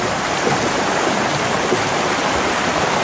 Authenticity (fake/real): real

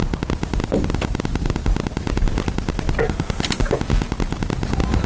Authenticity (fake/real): real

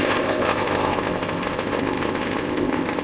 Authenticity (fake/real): fake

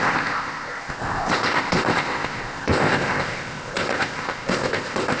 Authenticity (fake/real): fake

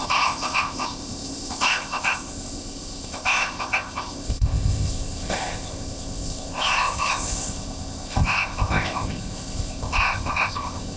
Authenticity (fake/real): fake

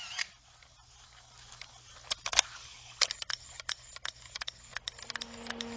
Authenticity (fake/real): real